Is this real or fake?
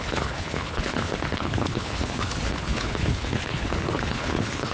fake